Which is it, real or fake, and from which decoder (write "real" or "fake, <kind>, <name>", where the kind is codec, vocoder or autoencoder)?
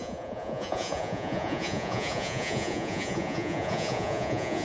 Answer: fake, vocoder, Vocos